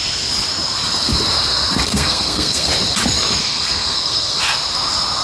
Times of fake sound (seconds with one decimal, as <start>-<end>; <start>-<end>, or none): 1.9-2.7; 3.4-4.4

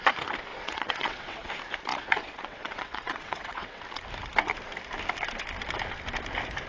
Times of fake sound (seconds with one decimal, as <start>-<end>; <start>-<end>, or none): 0.5-1.5; 1.9-3.8

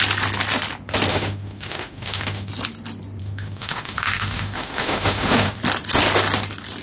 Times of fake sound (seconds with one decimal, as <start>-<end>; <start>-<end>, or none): 1.1-2.5; 3.2-5.6

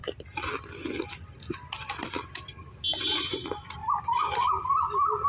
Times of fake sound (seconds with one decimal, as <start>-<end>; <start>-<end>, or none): none

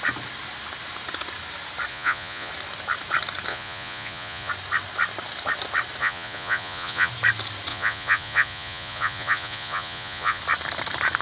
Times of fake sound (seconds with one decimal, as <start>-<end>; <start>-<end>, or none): 1.9-2.5; 3.5-4.5; 6.0-7.1; 7.7-10.4

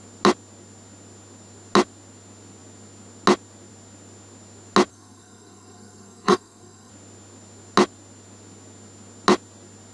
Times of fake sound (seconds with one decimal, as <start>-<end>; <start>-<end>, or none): 4.9-6.9

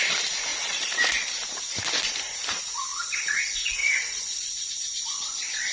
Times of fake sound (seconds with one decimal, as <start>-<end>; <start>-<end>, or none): 0.5-1.2; 2.9-3.4; 3.8-4.7

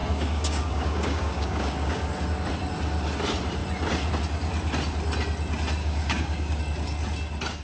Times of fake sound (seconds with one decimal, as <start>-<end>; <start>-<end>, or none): 0.0-2.1; 5.8-6.6